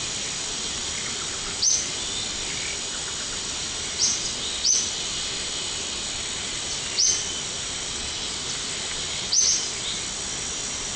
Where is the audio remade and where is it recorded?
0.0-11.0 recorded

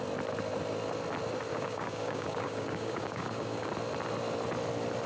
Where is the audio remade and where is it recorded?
0.0-1.5 recorded; 1.5-3.7 remade; 3.7-5.1 recorded

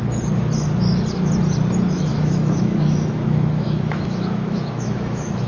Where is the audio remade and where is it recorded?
0.0-2.1 recorded; 2.1-5.5 remade

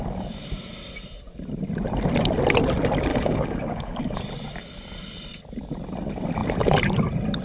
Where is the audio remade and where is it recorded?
0.0-3.1 recorded; 3.1-4.2 remade; 4.2-7.4 recorded

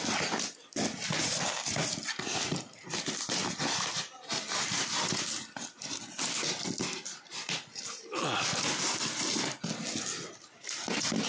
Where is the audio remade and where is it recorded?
0.0-11.3 recorded